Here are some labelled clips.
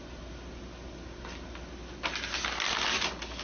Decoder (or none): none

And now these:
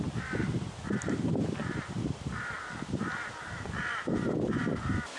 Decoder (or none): none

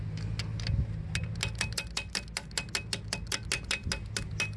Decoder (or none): none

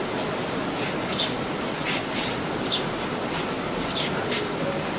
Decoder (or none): none